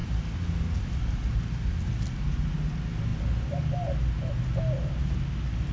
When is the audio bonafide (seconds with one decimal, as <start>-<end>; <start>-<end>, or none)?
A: 1.0-5.7